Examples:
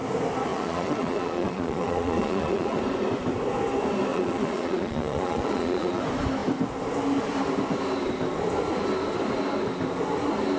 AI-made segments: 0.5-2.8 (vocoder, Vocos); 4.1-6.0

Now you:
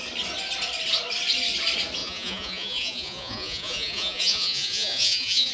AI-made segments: 2.0-5.5 (vocoder, Vocos)

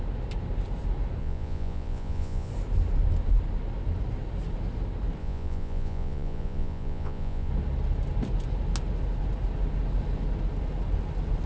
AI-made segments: 1.2-2.5 (vocoder, Vocos); 5.2-7.5